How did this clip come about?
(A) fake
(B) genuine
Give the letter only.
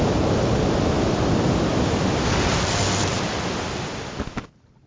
B